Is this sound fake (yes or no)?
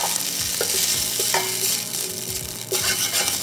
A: no